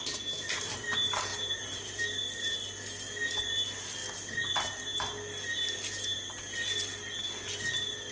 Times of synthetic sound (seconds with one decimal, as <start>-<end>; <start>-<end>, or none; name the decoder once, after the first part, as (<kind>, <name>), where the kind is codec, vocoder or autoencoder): none